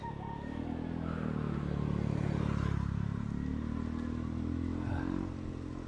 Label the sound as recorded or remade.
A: recorded